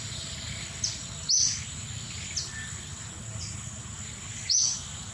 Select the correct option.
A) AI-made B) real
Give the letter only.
B